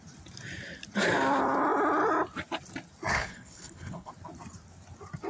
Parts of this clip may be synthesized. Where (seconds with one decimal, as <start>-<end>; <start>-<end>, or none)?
3.1-4.1